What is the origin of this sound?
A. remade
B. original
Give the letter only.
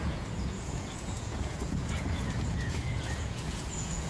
A